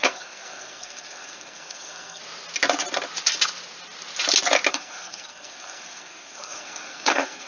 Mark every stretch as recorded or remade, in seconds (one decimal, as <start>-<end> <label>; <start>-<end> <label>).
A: 0.0-2.2 remade; 2.2-4.7 recorded; 4.7-7.5 remade